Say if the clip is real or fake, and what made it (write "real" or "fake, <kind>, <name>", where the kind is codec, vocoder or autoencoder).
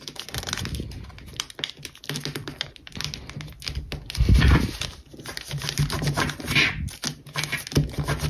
real